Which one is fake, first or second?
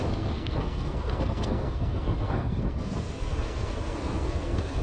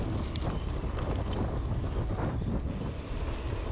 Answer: first